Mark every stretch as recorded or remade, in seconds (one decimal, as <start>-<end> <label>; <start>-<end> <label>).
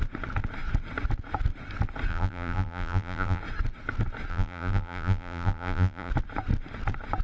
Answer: 0.0-2.1 recorded; 2.1-3.4 remade; 3.4-4.3 recorded; 4.3-6.1 remade; 6.1-7.2 recorded